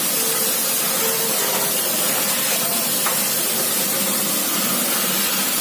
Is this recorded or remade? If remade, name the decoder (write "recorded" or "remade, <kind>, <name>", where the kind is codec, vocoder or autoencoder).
recorded